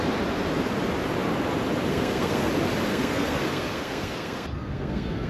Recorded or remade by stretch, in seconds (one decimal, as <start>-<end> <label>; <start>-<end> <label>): 0.0-1.9 recorded; 1.9-2.5 remade; 2.5-2.9 recorded; 2.9-5.3 remade